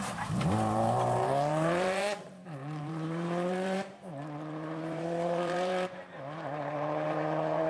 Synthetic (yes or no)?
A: yes